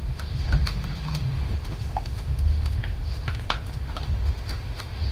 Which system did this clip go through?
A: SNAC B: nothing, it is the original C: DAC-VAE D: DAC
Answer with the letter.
C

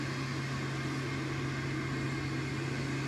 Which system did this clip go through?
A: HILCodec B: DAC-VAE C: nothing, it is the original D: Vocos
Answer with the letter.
C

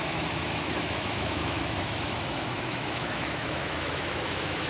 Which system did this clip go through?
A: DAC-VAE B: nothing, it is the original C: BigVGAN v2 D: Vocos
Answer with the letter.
A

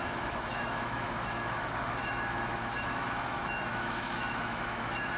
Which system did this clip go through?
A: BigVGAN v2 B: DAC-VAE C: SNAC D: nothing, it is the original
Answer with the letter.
B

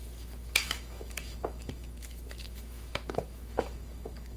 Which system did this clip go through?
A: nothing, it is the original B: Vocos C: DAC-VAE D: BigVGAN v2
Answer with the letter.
C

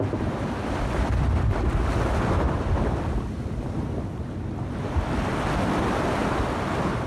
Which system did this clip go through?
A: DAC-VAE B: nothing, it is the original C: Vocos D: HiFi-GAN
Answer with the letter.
B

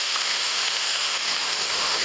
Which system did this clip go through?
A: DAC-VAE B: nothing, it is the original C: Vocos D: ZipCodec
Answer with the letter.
A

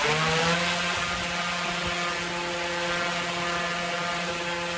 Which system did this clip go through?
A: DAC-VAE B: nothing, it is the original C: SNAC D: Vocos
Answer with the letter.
B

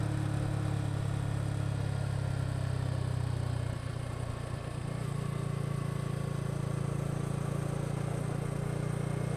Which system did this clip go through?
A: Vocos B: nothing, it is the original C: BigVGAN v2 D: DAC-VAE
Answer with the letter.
B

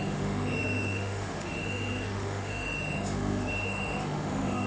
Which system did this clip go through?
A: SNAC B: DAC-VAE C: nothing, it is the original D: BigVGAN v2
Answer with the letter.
B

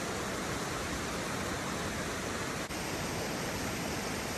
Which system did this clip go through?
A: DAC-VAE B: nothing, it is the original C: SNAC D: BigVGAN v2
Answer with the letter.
B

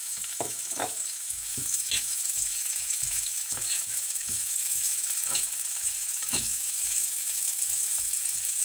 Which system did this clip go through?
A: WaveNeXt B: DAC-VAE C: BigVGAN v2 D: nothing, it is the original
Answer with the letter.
B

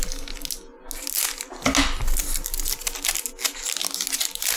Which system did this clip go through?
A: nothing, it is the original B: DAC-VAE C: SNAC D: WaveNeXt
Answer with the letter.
A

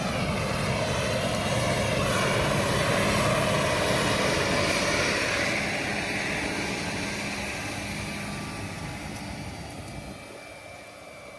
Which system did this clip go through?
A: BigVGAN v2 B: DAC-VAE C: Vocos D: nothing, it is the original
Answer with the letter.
D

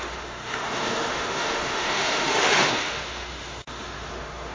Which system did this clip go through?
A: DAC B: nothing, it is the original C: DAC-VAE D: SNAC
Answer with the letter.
C